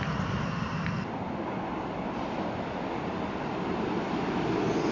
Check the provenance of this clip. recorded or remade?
recorded